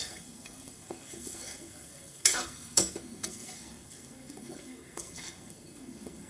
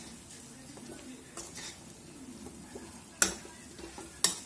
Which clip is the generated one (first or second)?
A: first